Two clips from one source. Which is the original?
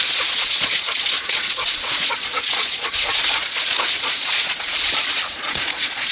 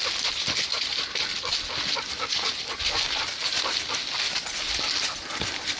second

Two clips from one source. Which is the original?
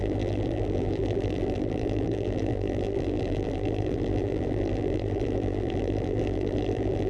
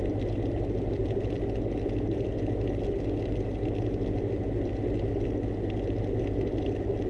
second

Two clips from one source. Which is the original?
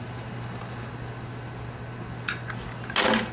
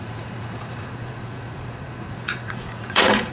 first